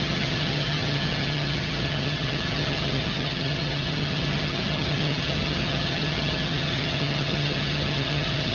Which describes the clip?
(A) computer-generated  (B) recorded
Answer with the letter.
A